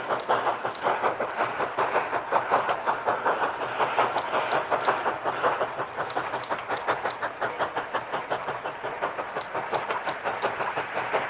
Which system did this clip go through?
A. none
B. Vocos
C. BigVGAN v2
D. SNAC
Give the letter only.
A